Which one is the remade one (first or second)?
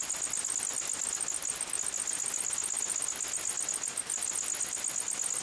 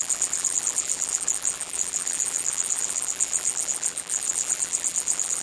second